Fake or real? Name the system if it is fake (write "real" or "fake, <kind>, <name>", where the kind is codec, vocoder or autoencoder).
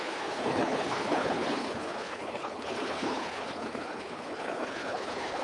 fake, codec, HILCodec